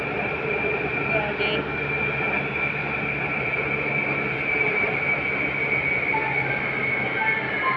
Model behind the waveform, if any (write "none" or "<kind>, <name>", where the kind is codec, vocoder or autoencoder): none